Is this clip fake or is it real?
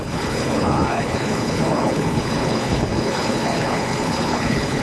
fake